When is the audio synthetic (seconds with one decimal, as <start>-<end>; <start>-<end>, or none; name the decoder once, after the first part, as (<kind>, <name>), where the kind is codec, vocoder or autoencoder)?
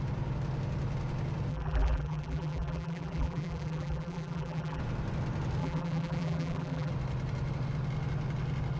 1.5-4.8 (vocoder, BigVGAN v2); 5.6-6.9